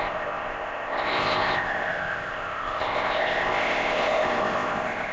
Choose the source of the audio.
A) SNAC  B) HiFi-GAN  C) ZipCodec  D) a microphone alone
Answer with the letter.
C